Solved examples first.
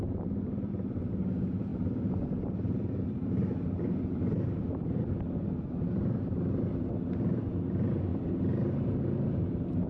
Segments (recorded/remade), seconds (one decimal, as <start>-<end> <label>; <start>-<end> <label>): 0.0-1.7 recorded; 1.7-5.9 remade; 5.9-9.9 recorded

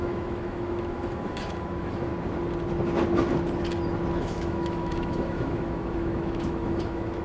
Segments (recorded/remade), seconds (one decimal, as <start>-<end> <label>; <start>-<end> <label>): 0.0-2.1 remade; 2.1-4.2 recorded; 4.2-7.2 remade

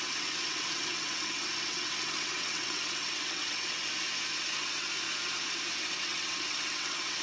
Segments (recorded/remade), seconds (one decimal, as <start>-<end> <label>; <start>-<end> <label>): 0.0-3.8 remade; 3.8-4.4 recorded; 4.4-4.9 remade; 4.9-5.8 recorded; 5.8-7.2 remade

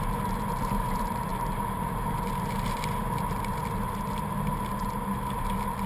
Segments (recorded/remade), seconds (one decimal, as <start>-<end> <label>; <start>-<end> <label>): 0.0-5.9 recorded

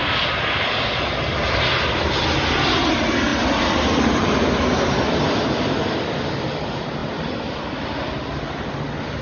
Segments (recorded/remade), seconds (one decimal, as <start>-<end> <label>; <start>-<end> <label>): 0.0-9.2 recorded